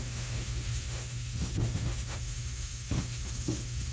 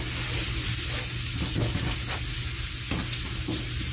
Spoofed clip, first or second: first